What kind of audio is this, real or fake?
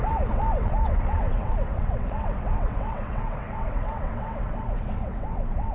fake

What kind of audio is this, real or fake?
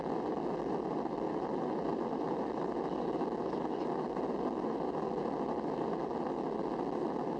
real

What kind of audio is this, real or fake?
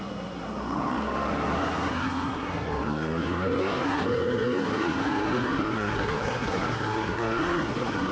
fake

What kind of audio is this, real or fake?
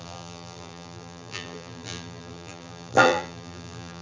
fake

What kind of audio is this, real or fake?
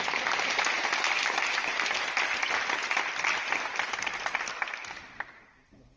real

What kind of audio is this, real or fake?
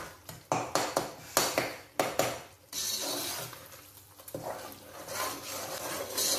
real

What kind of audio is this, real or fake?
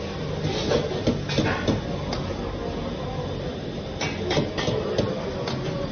real